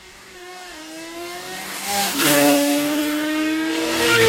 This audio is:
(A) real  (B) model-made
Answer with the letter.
B